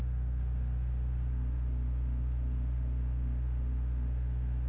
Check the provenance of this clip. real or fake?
fake